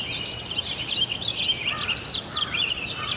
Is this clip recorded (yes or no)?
yes